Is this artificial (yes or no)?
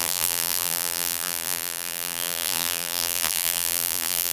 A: yes